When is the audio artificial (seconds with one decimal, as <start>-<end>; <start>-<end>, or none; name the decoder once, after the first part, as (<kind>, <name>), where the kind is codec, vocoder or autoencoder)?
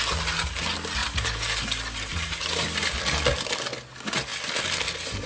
1.0-1.6 (vocoder, BigVGAN v2); 2.1-2.8